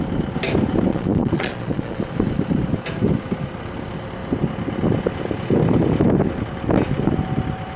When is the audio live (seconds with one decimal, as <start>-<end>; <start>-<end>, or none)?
0.0-0.9; 2.0-7.8